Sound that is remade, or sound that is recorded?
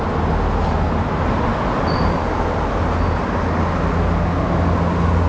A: recorded